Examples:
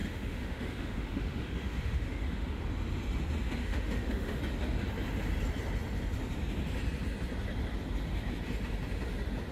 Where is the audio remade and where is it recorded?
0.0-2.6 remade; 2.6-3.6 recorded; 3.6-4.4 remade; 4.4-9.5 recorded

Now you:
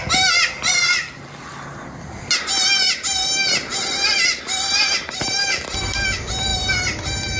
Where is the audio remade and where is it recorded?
0.0-6.5 recorded; 6.5-7.4 remade

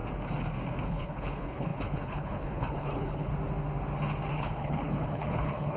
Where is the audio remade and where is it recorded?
0.0-0.8 recorded; 0.8-3.3 remade; 3.3-4.3 recorded; 4.3-5.8 remade

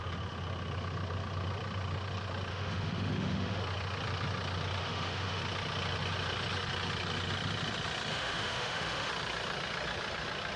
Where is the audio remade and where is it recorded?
0.0-2.5 recorded; 2.5-3.6 remade; 3.6-4.8 recorded; 4.8-5.4 remade; 5.4-8.1 recorded; 8.1-9.1 remade; 9.1-10.6 recorded

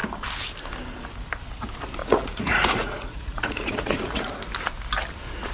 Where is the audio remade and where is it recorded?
0.0-2.0 recorded; 2.0-4.3 remade; 4.3-5.5 recorded

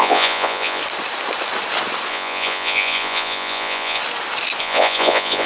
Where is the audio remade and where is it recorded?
0.0-0.8 remade; 0.8-2.1 recorded; 2.1-4.0 remade; 4.0-4.6 recorded; 4.6-5.5 remade